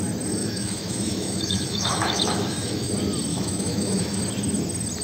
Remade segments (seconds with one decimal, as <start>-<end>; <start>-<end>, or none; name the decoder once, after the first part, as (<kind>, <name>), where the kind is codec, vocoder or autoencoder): 0.4-2.9 (autoencoder, DAC-VAE); 3.3-4.2